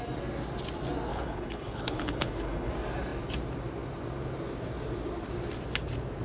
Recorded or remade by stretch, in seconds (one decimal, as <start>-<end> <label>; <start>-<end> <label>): 0.0-1.1 recorded; 1.1-2.7 remade; 2.7-6.2 recorded